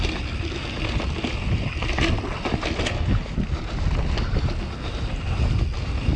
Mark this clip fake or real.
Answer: real